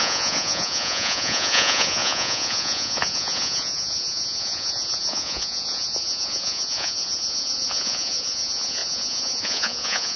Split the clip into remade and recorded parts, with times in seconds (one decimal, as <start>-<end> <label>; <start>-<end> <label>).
0.0-10.2 remade